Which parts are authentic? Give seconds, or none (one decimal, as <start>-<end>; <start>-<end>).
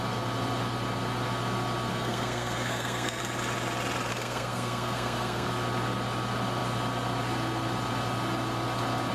0.0-1.9; 3.2-4.1; 5.5-9.1